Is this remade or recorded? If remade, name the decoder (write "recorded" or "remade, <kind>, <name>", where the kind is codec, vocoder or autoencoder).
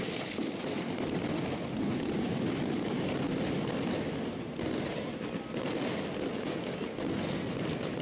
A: recorded